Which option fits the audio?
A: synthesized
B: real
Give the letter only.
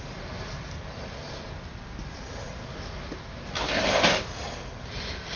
B